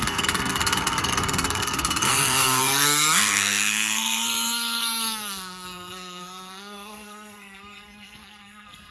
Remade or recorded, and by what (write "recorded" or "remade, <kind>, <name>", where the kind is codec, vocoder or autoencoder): remade, codec, SNAC